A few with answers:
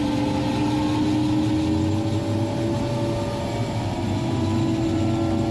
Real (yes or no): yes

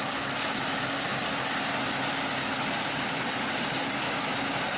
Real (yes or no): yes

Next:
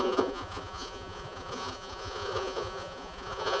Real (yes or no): no